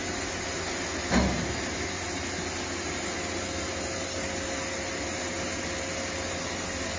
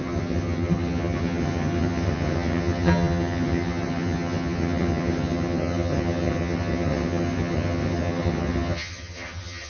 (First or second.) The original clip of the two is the first